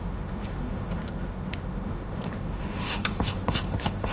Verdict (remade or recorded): remade